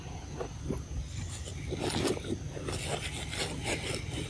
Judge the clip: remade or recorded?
recorded